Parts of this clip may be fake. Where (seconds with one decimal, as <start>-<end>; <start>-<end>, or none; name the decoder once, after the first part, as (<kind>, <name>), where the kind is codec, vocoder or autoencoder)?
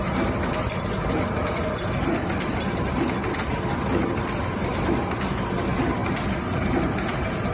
none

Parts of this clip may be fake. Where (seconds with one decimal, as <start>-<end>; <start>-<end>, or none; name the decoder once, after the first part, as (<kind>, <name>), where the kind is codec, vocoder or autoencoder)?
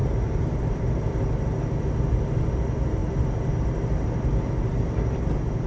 0.0-1.0 (vocoder, BigVGAN v2); 3.0-3.6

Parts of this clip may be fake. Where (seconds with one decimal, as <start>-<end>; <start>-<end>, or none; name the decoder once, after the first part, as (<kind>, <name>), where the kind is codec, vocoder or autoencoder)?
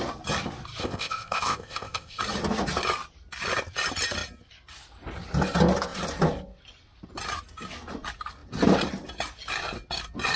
0.8-2.2 (codec, ZipCodec)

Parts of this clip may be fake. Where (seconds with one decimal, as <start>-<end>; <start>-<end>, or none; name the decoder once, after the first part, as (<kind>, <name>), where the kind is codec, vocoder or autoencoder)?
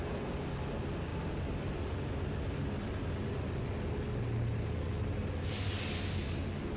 none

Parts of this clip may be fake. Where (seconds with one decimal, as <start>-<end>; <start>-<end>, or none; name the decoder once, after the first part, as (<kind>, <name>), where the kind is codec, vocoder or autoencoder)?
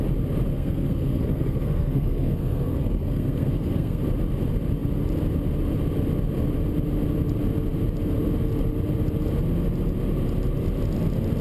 0.5-4.0 (codec, SNAC)